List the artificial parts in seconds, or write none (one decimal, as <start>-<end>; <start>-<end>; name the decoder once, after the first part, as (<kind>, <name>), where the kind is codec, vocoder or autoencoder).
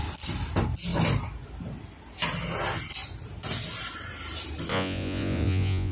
4.7-5.9 (vocoder, Vocos)